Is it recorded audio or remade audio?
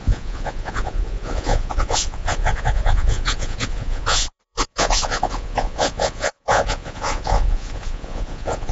remade